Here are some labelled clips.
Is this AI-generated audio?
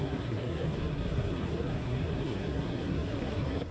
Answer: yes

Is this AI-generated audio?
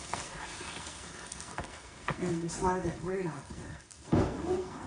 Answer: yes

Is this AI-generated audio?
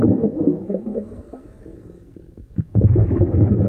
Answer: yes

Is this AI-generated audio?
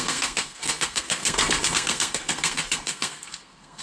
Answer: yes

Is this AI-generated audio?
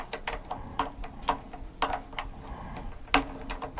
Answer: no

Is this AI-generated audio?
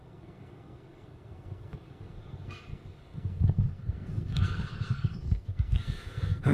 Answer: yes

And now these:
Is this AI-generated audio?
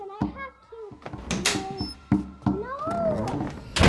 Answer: no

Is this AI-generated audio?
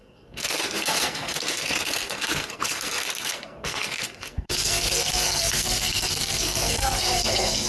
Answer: yes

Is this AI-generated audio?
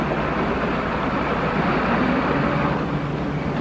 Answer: no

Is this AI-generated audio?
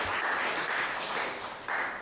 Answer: no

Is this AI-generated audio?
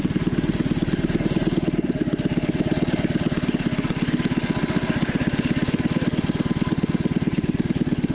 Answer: no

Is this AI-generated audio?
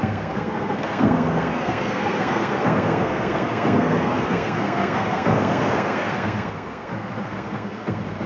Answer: yes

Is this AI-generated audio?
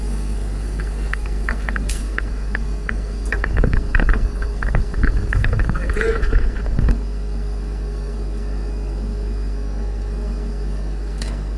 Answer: yes